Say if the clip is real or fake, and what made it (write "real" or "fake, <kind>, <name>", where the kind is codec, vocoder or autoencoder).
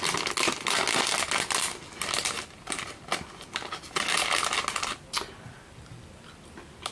real